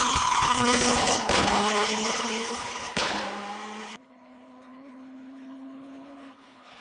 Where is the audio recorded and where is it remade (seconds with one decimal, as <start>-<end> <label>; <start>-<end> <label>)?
0.0-3.2 remade; 3.2-3.8 recorded; 3.8-6.8 remade